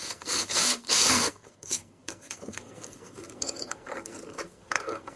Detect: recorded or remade remade